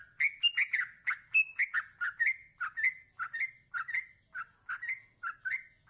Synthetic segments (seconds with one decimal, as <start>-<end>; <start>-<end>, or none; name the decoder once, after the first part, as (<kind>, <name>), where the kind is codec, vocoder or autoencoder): none